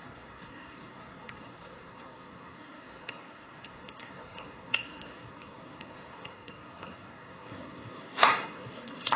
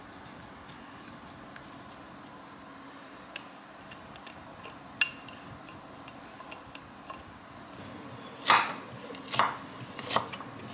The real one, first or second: second